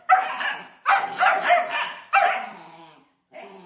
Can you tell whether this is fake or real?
real